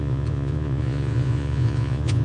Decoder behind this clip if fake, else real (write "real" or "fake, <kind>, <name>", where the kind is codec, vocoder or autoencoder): fake, vocoder, Vocos